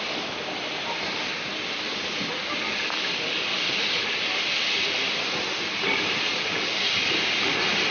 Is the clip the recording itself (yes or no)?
yes